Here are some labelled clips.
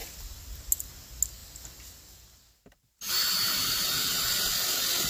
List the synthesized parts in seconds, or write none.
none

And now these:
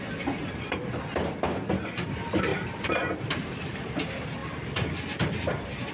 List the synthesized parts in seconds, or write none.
2.5-4.0 (vocoder, BigVGAN v2)

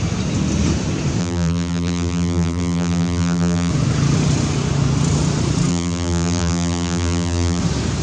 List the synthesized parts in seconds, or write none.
1.2-3.7 (vocoder, BigVGAN v2); 5.7-7.6

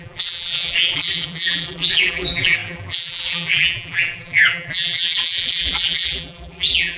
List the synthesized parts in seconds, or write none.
0.0-7.0 (vocoder, BigVGAN v2)